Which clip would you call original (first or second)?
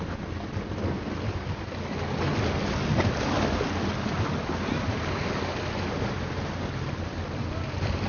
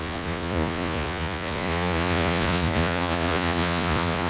first